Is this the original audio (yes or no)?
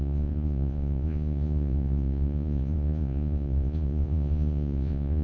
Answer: no